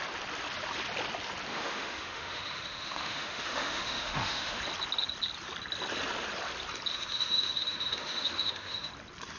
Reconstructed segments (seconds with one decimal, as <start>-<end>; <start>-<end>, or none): 1.5-4.6; 6.9-8.9

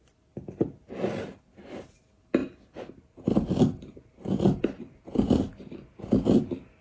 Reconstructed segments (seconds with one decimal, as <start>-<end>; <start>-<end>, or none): none

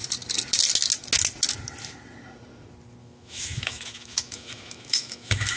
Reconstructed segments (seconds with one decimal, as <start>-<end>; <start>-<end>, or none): 3.0-5.6